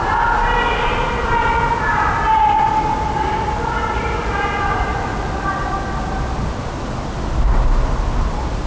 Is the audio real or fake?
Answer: real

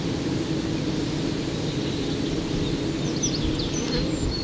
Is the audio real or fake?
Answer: real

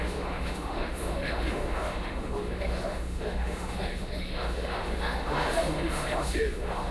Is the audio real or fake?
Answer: fake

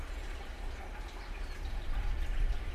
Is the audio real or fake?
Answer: real